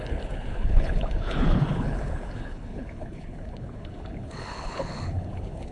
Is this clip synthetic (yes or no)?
yes